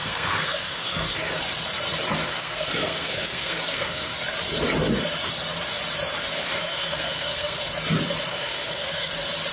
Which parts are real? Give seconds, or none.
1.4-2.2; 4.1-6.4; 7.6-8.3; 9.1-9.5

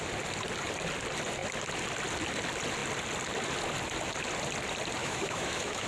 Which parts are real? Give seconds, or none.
0.0-5.0

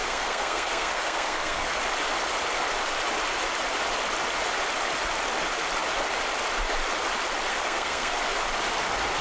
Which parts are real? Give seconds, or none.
1.8-7.5; 8.1-9.2

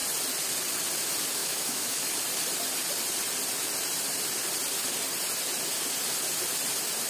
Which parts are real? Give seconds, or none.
0.0-1.4; 2.1-7.1

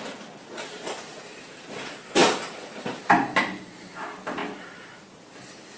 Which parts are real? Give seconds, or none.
0.0-5.8

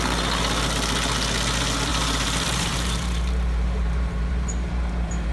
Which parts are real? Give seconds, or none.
0.0-1.9

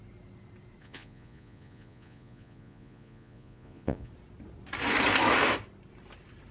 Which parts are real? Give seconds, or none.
0.0-0.8; 4.1-6.5

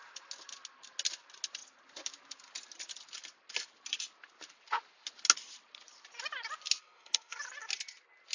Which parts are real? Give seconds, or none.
0.0-6.8; 7.4-8.3